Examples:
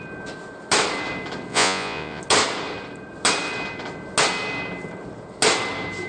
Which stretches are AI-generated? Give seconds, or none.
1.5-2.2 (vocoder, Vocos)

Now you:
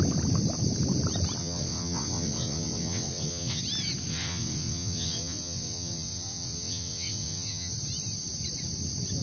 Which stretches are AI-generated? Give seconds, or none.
1.4-3.6 (vocoder, WaveNeXt); 4.1-7.7

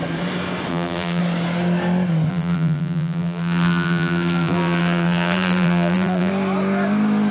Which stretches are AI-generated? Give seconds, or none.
0.7-1.2 (vocoder, BigVGAN v2); 2.3-6.3

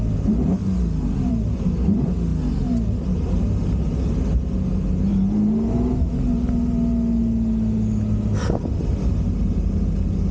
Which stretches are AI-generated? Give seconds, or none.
none

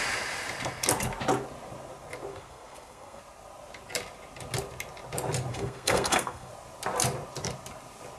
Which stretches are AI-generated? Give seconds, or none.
2.3-3.2 (codec, SNAC); 5.5-6.5